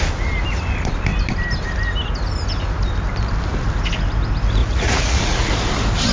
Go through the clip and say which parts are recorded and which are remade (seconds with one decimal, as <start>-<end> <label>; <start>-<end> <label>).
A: 0.0-4.6 recorded; 4.6-5.5 remade; 5.5-6.1 recorded